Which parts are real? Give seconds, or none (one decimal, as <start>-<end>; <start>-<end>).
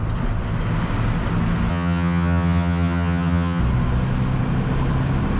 0.0-1.7; 3.6-5.4